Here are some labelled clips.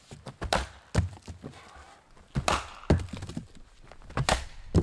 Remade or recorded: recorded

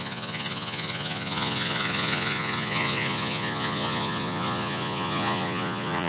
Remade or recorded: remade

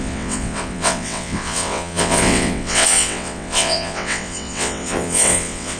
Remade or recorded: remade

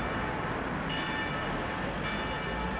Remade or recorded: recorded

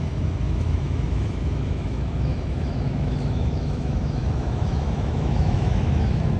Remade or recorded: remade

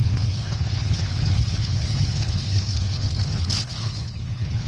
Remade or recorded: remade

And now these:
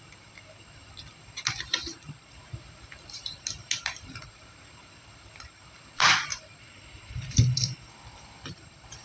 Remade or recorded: remade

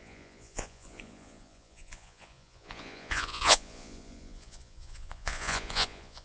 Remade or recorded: remade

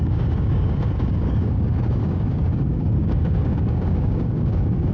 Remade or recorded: remade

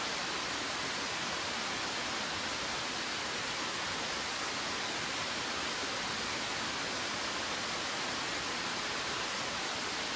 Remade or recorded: recorded